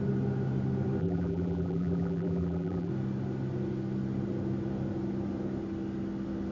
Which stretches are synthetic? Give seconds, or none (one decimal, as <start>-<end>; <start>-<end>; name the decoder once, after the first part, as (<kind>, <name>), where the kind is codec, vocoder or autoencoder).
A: 1.0-2.9 (vocoder, BigVGAN v2)